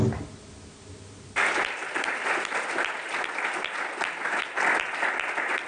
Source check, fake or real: real